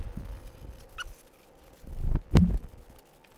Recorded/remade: recorded